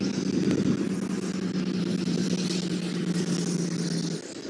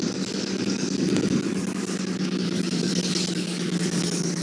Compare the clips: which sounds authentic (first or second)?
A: first